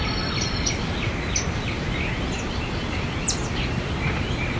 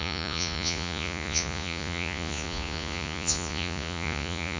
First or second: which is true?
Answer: first